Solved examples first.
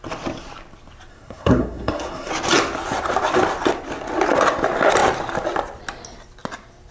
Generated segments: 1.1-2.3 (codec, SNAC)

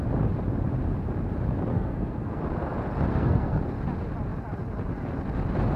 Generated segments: 1.7-2.4 (codec, SNAC); 3.1-3.6

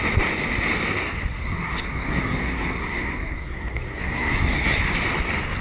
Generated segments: 1.4-4.8 (codec, SNAC)

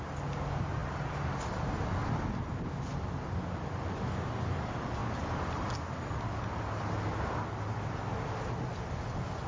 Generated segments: none

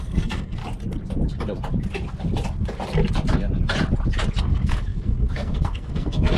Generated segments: 0.0-0.6 (codec, SNAC); 4.4-6.4